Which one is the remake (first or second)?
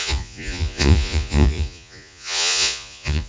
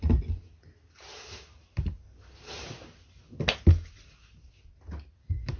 first